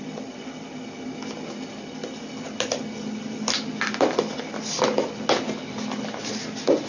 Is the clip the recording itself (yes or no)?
yes